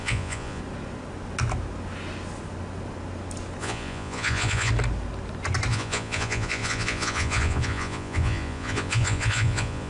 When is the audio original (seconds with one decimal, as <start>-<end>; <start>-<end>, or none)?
0.6-3.6; 4.7-5.7